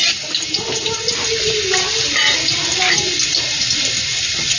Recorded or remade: recorded